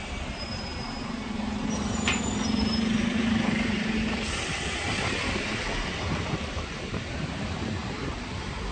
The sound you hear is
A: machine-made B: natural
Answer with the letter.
A